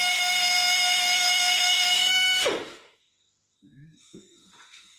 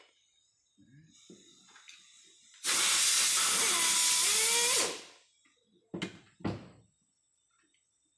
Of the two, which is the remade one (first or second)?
first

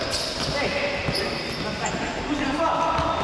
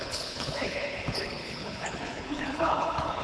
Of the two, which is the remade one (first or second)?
second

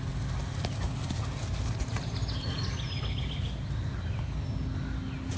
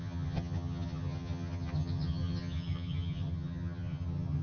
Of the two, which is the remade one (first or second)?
second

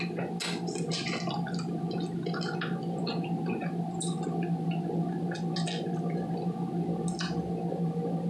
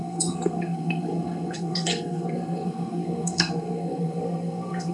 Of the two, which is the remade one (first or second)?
second